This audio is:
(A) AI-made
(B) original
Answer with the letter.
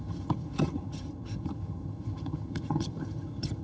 A